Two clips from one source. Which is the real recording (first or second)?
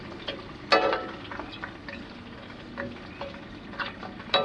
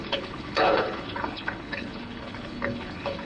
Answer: first